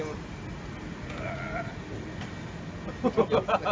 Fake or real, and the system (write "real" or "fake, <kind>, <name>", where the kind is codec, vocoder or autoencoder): real